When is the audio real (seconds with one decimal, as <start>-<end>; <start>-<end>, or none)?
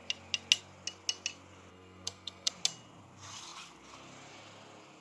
0.0-1.7; 2.5-5.0